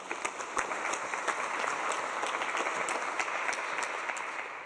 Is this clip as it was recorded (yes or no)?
yes